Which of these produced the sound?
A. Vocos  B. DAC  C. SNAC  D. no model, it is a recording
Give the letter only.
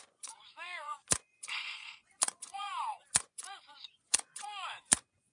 A